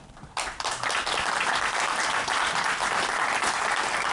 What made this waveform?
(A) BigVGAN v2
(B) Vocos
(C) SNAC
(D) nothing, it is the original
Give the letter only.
D